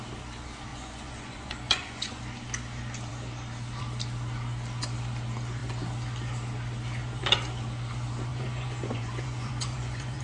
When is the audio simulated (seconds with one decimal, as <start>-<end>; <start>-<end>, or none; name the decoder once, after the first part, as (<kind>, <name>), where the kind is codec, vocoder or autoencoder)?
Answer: 0.7-2.2 (vocoder, Vocos); 8.3-10.2